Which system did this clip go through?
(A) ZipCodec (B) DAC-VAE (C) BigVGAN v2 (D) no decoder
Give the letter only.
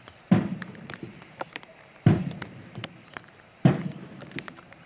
C